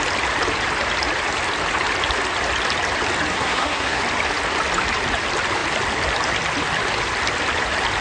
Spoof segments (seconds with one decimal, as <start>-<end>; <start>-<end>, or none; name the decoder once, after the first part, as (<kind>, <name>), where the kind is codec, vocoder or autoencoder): 3.3-4.0 (codec, SNAC)